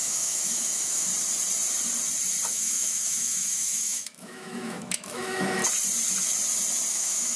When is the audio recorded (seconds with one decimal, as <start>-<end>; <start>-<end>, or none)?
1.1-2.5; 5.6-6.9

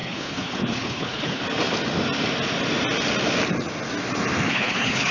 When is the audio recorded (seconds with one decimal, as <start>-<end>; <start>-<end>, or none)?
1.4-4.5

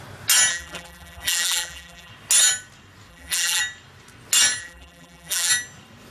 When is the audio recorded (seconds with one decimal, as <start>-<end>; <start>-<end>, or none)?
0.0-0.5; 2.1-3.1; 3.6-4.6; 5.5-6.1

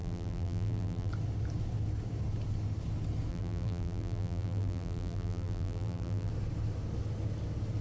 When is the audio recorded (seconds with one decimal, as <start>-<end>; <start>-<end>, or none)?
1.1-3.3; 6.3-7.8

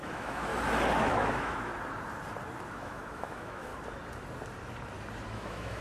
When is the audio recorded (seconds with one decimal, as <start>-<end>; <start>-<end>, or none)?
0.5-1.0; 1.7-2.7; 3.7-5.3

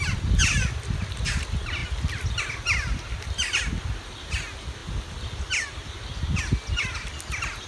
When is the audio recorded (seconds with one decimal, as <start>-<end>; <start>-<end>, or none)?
0.0-7.7

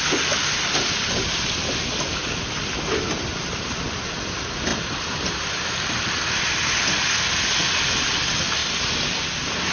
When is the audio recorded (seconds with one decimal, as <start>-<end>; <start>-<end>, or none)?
0.0-9.7